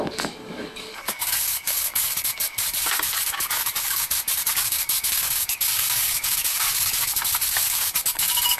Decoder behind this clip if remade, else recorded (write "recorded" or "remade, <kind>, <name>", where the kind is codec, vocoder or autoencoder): remade, codec, DAC